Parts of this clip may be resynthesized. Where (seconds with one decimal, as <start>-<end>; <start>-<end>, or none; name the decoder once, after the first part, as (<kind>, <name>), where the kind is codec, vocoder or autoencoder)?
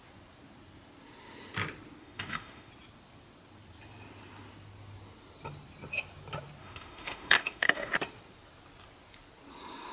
2.0-2.7 (autoencoder, DAC-VAE); 6.6-7.9